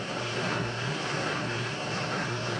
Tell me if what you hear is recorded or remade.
remade